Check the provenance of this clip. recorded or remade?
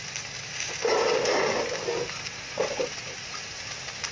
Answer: recorded